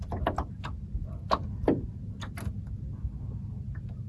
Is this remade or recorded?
recorded